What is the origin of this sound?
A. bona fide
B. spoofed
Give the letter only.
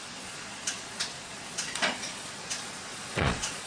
B